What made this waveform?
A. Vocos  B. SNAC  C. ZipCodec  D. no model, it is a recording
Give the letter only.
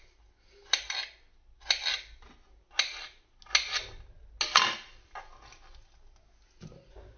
D